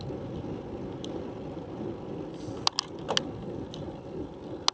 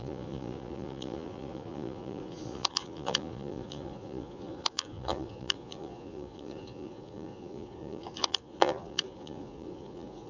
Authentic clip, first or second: first